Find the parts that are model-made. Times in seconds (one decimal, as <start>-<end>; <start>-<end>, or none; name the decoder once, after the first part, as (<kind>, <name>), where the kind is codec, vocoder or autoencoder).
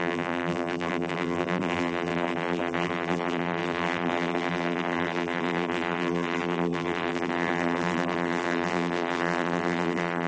0.0-10.3 (vocoder, BigVGAN v2)